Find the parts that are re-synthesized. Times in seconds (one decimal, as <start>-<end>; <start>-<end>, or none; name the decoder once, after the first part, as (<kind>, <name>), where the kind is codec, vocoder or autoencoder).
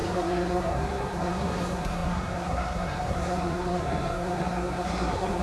0.0-5.4 (codec, SNAC)